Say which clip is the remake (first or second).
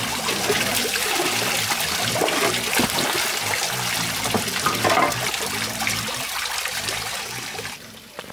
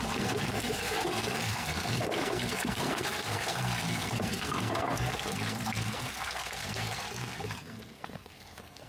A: second